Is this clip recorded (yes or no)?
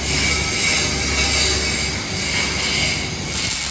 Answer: yes